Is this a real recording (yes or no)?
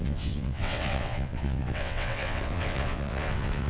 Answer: no